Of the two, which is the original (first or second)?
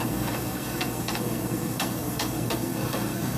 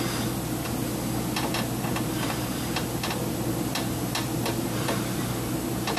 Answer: second